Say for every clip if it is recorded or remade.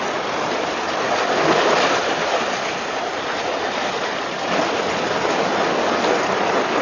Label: recorded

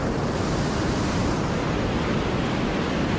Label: recorded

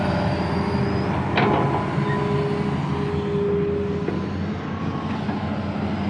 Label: recorded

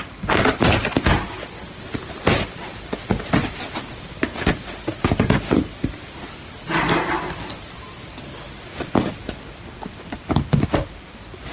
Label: recorded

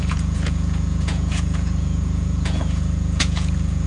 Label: remade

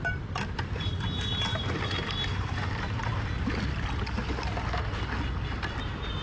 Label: recorded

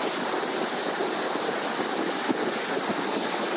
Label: recorded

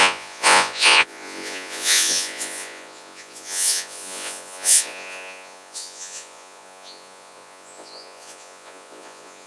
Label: remade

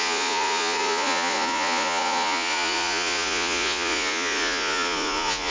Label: remade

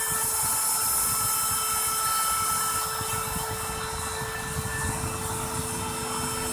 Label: recorded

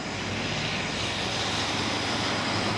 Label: recorded